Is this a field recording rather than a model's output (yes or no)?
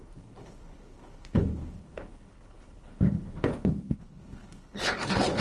no